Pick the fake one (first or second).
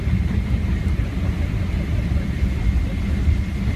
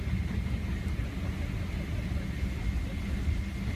first